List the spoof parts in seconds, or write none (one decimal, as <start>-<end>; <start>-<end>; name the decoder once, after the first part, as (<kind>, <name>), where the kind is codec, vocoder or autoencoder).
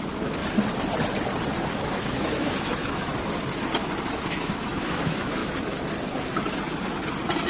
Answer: 0.0-0.4 (autoencoder, DAC-VAE); 1.8-3.1; 4.1-5.4